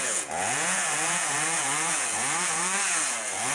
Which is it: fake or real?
fake